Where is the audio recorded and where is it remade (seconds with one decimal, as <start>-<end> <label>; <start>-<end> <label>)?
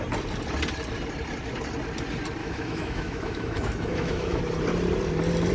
0.0-2.4 recorded; 2.4-4.4 remade; 4.4-5.5 recorded